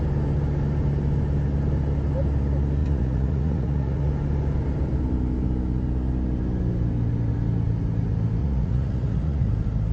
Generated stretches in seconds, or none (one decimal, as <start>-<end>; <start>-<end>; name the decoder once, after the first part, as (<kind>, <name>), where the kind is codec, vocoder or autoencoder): 2.8-4.1 (vocoder, Vocos); 8.4-9.5